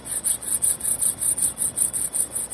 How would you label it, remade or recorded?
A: recorded